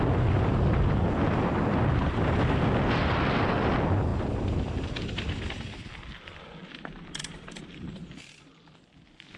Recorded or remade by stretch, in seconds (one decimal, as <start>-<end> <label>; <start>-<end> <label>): 0.0-6.6 recorded; 6.6-8.1 remade; 8.1-9.4 recorded